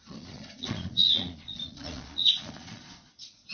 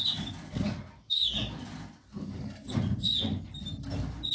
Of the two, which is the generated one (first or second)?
first